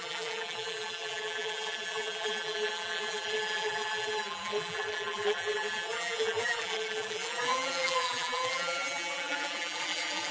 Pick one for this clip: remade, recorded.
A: remade